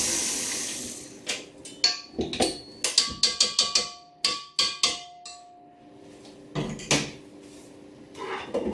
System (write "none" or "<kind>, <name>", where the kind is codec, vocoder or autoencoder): none